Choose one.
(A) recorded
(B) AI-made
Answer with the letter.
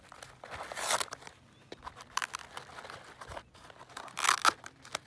A